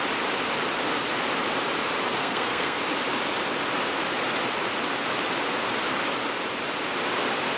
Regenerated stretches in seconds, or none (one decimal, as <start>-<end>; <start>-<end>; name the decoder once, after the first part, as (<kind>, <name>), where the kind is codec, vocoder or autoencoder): 2.2-2.8 (codec, SNAC)